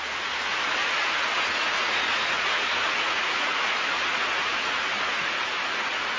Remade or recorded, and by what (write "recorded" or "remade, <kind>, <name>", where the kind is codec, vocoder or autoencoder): remade, vocoder, Vocos